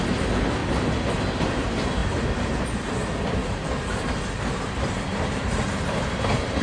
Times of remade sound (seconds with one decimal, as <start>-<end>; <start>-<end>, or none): 0.0-0.6; 1.4-2.0; 2.6-3.4; 4.9-6.6

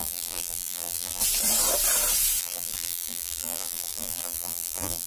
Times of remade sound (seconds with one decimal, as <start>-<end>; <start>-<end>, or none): 0.0-1.2; 2.4-5.1

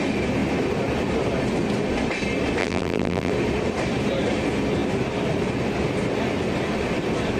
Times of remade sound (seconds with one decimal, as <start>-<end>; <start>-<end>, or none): 2.6-3.3

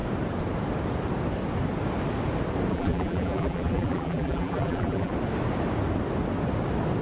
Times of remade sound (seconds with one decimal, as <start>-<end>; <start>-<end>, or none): 2.7-5.1

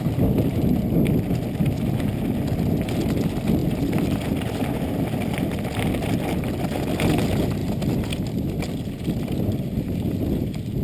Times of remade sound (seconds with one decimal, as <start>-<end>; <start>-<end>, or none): 3.6-5.5

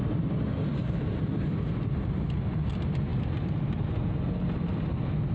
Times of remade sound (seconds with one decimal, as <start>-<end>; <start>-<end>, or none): 0.7-2.7; 3.1-5.3

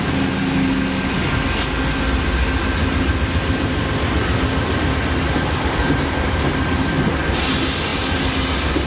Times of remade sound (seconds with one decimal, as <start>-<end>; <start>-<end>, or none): 5.8-7.5

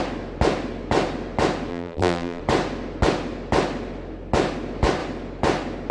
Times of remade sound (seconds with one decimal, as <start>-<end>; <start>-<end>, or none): 1.7-2.4